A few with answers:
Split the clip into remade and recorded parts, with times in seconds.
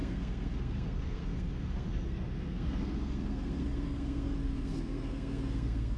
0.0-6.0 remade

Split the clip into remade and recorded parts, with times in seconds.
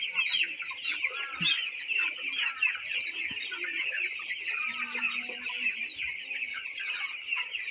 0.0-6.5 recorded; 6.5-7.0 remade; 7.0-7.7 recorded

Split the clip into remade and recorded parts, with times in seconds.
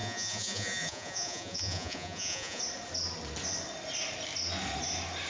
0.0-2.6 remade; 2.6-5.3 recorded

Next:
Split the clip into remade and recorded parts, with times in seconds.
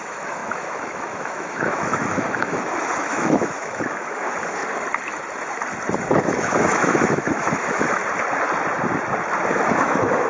0.0-4.6 remade; 4.6-6.2 recorded; 6.2-8.0 remade; 8.0-9.5 recorded; 9.5-10.3 remade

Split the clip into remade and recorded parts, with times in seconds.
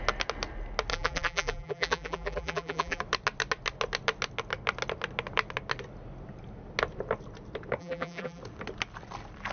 0.0-0.9 recorded; 0.9-3.0 remade; 3.0-7.8 recorded; 7.8-8.4 remade; 8.4-9.5 recorded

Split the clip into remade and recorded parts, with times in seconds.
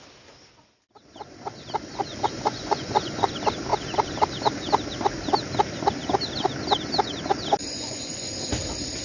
0.0-2.1 recorded; 2.1-3.3 remade; 3.3-7.6 recorded; 7.6-8.3 remade; 8.3-9.0 recorded